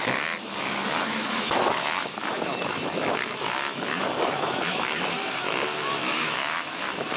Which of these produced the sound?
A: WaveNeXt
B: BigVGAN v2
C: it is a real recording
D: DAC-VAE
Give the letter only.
D